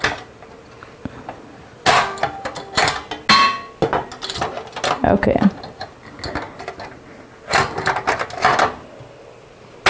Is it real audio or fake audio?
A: real